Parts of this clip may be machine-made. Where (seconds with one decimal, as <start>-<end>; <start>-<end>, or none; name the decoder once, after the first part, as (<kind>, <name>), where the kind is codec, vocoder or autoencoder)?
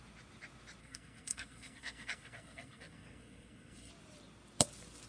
0.8-3.9 (codec, SNAC)